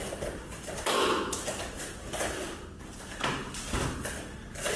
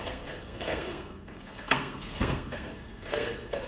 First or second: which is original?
first